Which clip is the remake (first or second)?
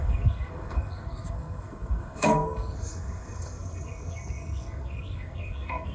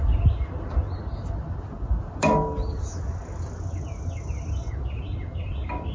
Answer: first